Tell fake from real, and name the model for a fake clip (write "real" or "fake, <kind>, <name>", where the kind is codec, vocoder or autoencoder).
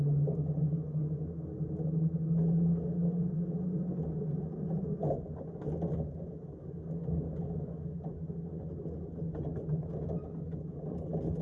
real